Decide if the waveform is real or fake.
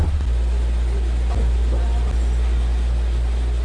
real